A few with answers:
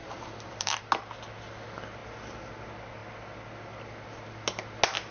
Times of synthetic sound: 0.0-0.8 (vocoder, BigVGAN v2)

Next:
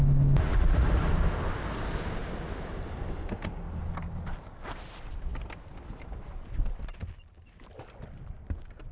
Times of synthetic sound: 0.5-1.1 (vocoder, Vocos)

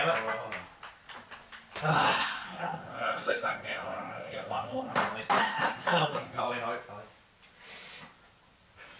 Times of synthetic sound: 1.9-5.0 (codec, SNAC); 5.4-6.4

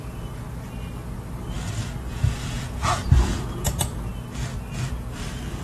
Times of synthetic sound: 2.1-4.1 (vocoder, Vocos)